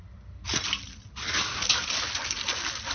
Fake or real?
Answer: real